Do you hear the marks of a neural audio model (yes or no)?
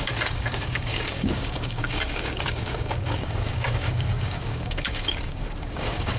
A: yes